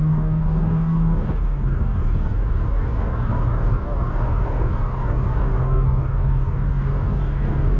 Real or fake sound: fake